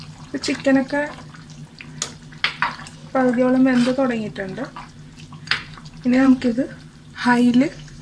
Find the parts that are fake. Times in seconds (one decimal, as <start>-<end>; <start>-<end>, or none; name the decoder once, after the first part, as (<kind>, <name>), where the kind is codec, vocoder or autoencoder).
0.0-1.6 (vocoder, BigVGAN v2); 5.4-8.0